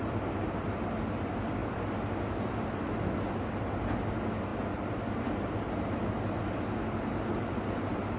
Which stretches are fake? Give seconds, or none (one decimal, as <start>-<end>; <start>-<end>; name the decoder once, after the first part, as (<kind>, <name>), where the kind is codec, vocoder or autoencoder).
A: none